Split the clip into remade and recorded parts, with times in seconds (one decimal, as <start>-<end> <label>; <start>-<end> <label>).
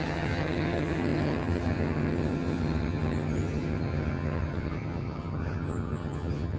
0.0-6.6 remade